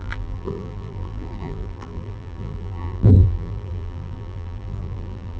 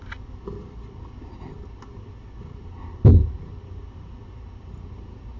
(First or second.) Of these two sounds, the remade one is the first